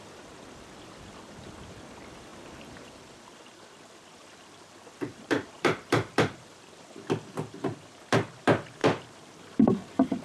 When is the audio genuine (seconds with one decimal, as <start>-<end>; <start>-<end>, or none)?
none